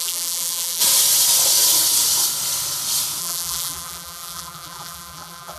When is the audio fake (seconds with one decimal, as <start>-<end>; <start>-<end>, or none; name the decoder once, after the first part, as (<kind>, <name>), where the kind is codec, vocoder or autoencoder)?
0.0-0.8 (vocoder, BigVGAN v2); 3.2-5.6